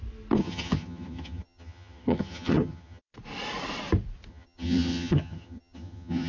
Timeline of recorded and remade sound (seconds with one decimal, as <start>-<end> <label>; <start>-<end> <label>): 0.0-0.4 recorded; 0.4-3.0 remade; 3.0-4.3 recorded; 4.3-6.3 remade